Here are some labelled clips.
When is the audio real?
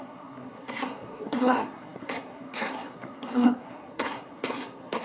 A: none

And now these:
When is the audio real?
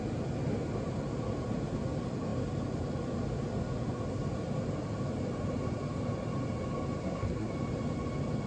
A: 0.0-7.0; 7.5-8.5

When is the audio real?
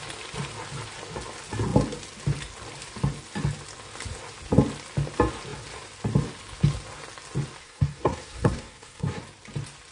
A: 0.0-7.6; 9.2-9.9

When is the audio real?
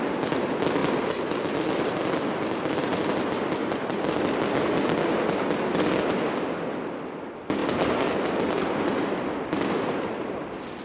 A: 0.0-10.8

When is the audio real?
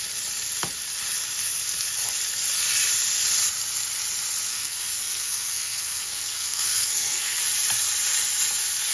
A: 0.0-4.5; 7.4-8.9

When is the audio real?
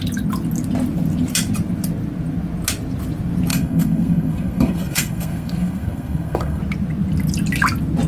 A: 0.0-3.5; 6.6-8.1